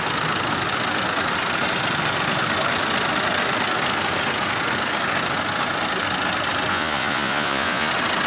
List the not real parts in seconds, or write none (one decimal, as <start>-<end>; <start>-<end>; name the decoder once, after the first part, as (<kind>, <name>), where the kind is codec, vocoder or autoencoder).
6.7-7.9 (vocoder, Vocos)